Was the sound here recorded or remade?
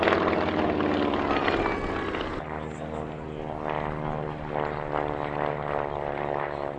recorded